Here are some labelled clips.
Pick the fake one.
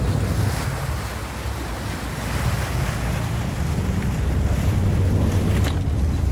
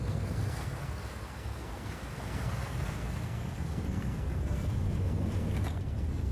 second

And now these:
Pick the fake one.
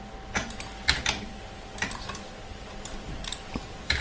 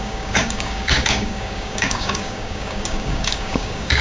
second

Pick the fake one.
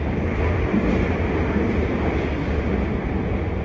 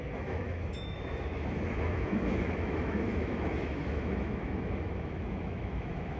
second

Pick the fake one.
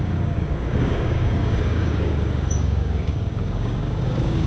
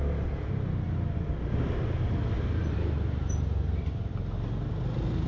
first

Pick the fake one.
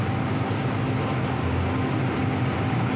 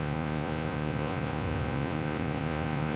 second